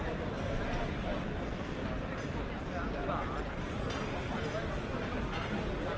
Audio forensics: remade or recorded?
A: recorded